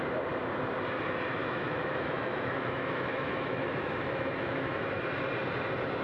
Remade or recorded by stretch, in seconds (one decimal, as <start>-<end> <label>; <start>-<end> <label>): 0.0-1.4 recorded; 1.4-5.0 remade; 5.0-6.0 recorded